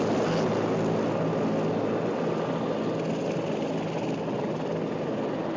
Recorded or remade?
recorded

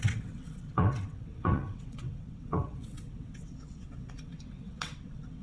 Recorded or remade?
remade